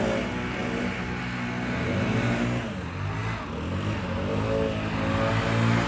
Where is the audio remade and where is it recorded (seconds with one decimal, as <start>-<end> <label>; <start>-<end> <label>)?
0.0-5.9 recorded

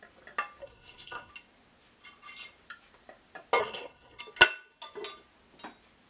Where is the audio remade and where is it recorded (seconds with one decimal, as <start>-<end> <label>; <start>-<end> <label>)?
0.0-0.6 recorded; 0.6-1.3 remade; 1.3-3.6 recorded; 3.6-4.2 remade; 4.2-6.1 recorded